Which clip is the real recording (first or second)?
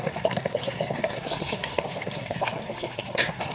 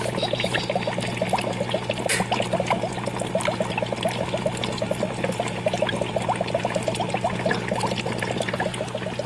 second